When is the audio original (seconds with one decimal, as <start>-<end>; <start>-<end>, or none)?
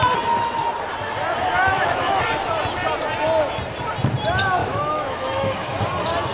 0.0-1.7; 2.2-4.6; 5.8-6.3